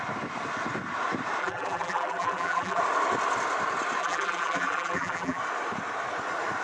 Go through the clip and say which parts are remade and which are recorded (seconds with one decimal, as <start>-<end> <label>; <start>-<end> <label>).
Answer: 0.0-1.4 recorded; 1.4-2.8 remade; 2.8-4.0 recorded; 4.0-5.4 remade; 5.4-6.6 recorded